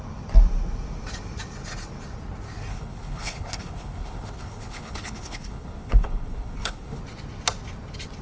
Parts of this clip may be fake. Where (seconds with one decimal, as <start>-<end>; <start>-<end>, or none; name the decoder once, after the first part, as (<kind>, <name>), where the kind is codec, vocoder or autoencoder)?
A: 2.7-7.0 (codec, HILCodec)

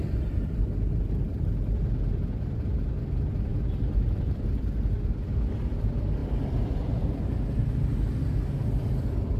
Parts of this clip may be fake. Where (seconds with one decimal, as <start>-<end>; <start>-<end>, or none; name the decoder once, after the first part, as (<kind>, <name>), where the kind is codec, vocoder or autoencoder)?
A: 3.5-4.4 (vocoder, BigVGAN v2)

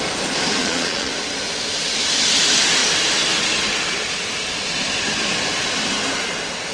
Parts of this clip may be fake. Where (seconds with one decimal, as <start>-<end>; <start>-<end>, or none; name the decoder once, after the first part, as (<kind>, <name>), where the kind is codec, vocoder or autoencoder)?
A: 0.6-1.1 (vocoder, Vocos)

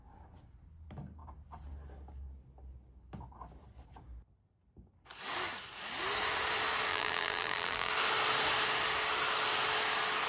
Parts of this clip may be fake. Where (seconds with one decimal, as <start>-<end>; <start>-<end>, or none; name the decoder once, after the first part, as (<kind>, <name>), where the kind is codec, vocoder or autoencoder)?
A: 6.9-7.9 (vocoder, BigVGAN v2)

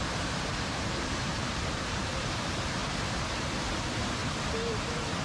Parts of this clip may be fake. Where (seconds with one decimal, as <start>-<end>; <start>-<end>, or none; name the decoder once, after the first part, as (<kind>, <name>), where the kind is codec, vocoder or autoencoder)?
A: 0.0-2.8 (vocoder, BigVGAN v2); 3.7-4.2; 4.7-5.2